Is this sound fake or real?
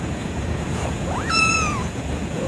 fake